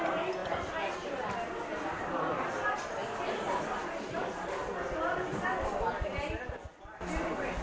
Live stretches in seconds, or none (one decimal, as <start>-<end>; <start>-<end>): 0.0-7.6